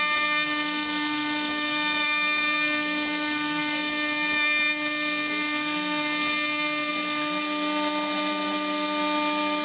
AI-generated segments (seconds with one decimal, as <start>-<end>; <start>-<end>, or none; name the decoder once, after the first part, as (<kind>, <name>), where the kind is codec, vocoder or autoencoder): none